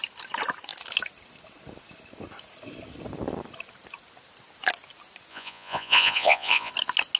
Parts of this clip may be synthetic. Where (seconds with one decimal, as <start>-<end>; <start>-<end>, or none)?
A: 5.3-6.7